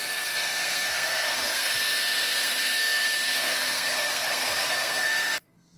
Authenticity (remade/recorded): remade